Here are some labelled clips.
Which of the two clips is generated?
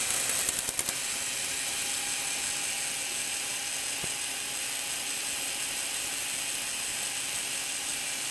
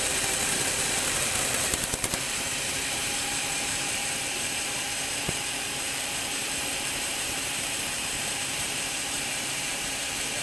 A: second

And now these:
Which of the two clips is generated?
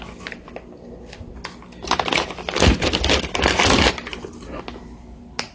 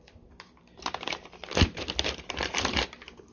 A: second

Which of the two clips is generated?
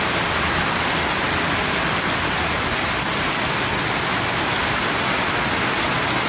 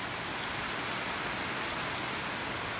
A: first